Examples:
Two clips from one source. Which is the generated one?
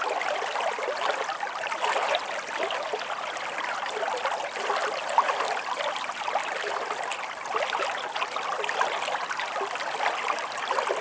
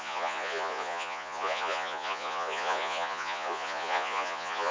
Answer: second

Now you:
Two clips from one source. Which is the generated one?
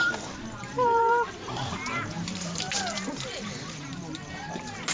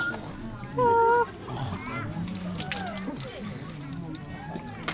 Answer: first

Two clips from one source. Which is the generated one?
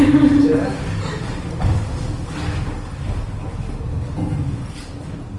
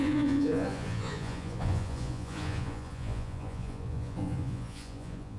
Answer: second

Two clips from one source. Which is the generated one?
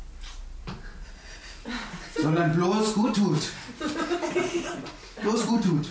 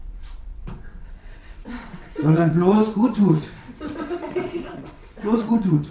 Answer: second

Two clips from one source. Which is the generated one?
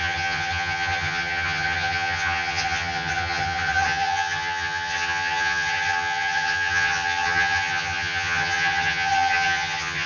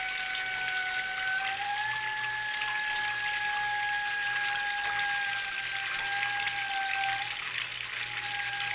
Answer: first